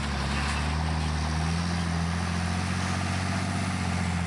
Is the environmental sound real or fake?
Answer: real